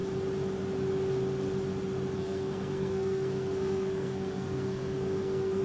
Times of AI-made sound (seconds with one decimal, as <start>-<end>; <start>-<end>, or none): 2.2-5.6